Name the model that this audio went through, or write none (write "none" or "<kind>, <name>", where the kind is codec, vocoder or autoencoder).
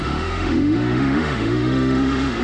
autoencoder, DAC-VAE